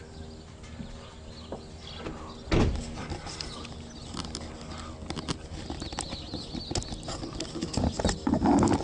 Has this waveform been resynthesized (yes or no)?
no